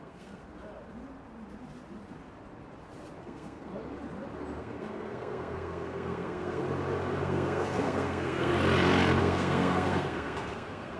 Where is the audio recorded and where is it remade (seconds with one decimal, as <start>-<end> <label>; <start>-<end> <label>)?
0.0-0.4 remade; 0.4-3.2 recorded; 3.2-3.7 remade; 3.7-4.6 recorded; 4.6-6.6 remade; 6.6-7.2 recorded; 7.2-8.5 remade; 8.5-9.2 recorded; 9.2-11.0 remade